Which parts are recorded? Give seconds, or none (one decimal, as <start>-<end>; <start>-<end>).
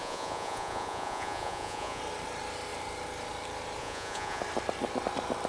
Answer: 2.0-3.8; 4.4-5.5